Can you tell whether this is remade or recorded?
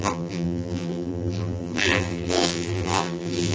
remade